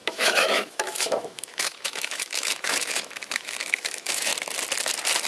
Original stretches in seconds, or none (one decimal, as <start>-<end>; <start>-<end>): 4.3-5.3